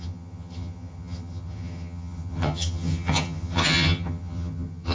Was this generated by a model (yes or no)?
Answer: yes